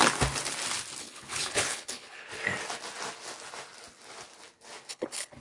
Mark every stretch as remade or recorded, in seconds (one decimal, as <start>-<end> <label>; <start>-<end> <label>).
0.0-1.0 recorded; 1.0-2.3 remade; 2.3-4.9 recorded; 4.9-5.4 remade